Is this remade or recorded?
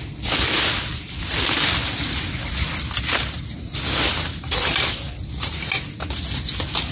recorded